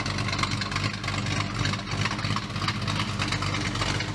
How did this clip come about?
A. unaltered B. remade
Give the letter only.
A